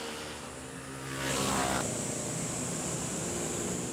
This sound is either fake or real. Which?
real